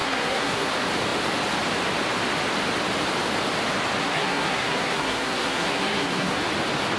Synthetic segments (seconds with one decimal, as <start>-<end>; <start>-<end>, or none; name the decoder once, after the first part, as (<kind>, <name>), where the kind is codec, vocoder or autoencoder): 0.0-0.7 (codec, SNAC); 4.0-6.4